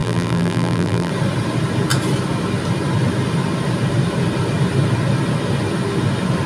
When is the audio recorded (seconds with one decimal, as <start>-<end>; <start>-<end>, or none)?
1.1-6.5